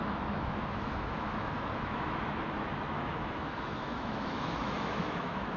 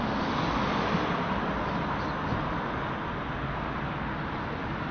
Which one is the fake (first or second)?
first